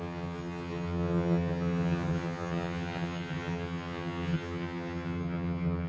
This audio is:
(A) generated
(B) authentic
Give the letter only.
A